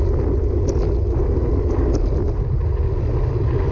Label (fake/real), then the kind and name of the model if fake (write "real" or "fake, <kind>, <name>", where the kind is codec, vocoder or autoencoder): real